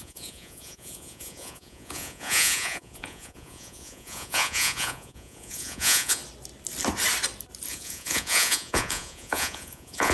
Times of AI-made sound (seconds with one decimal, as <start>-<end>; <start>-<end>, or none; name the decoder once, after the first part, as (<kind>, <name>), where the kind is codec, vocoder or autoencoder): 0.0-6.2 (vocoder, Vocos); 7.7-10.1